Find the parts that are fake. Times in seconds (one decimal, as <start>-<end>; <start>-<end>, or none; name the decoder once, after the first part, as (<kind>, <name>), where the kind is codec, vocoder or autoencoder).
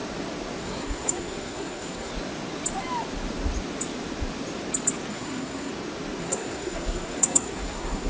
0.6-2.1 (codec, SNAC); 5.1-5.7; 6.2-8.1